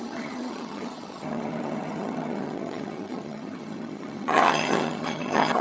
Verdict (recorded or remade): remade